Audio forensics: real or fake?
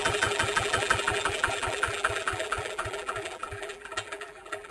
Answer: fake